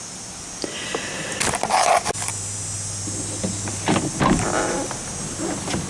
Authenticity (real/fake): real